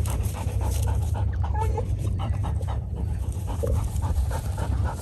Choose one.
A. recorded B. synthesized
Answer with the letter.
B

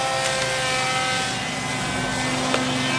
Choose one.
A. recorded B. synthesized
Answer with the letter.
A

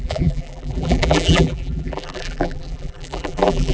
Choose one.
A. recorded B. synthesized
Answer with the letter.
B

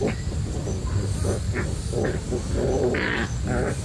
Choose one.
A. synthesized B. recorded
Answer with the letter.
B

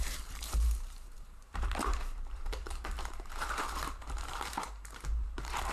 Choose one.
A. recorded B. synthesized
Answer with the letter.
B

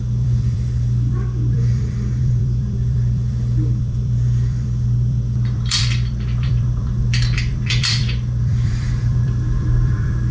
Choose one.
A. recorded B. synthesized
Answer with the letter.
B